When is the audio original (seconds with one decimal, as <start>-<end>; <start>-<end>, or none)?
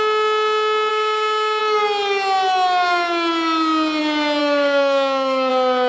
0.0-0.9; 1.6-4.4; 5.5-5.9